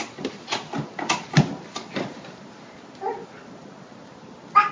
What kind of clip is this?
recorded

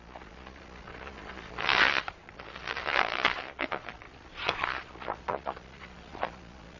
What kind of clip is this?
remade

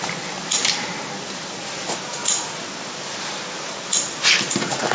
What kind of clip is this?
recorded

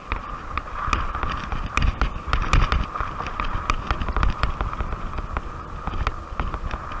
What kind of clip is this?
recorded